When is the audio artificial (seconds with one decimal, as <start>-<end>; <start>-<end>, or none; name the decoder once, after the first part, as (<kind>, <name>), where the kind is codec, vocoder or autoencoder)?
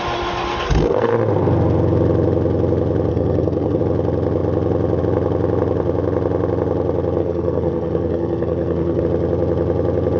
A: 0.5-1.1 (codec, SNAC); 3.1-3.8; 7.2-9.0